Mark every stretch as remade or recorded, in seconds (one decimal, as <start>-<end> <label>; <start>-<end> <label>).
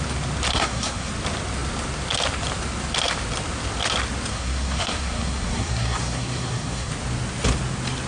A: 0.0-0.5 recorded; 0.5-1.1 remade; 1.1-4.3 recorded; 4.3-6.9 remade; 6.9-8.1 recorded